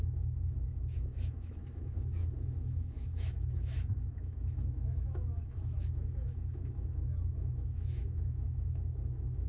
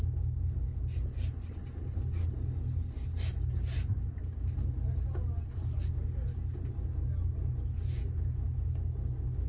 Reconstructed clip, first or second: first